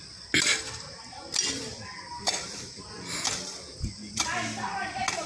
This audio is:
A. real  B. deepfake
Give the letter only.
A